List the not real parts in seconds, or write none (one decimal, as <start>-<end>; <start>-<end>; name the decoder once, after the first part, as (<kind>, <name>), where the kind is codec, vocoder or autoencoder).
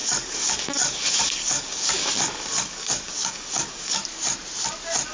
0.0-4.0 (codec, DAC)